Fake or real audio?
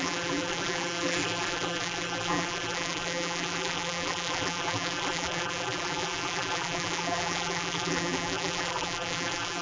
fake